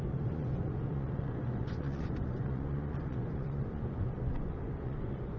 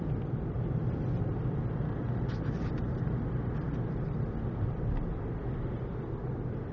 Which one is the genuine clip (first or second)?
second